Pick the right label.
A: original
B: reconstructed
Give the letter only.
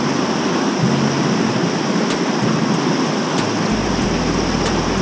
A